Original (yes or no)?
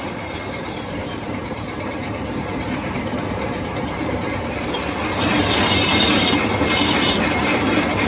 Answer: no